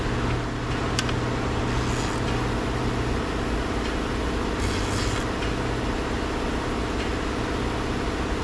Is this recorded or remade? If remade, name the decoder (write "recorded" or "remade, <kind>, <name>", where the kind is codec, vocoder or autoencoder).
recorded